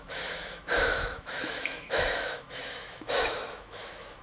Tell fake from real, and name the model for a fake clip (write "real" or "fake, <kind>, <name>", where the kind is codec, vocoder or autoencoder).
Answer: fake, autoencoder, DAC-VAE